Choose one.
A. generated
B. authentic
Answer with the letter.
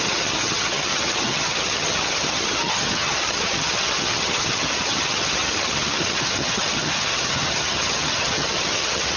A